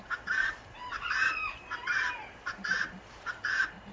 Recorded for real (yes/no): yes